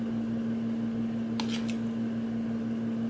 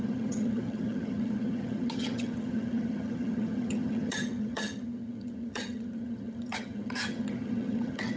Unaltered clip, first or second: first